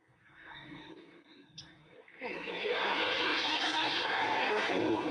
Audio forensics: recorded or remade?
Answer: remade